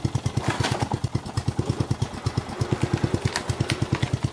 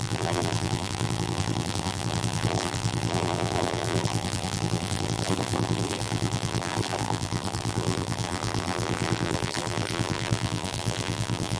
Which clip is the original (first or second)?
first